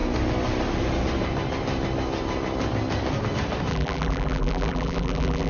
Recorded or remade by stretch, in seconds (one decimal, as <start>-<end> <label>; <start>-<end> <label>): 0.0-3.7 recorded; 3.7-5.5 remade